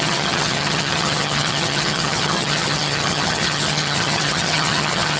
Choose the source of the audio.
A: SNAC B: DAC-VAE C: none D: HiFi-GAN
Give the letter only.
D